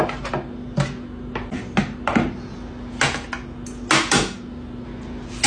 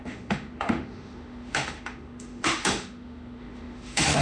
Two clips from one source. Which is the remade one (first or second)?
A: second